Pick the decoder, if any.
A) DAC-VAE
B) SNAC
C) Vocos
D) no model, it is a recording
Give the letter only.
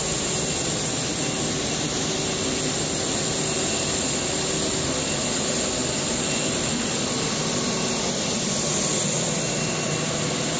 D